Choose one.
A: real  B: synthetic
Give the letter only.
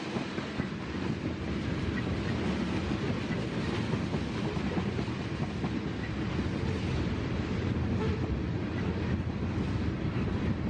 A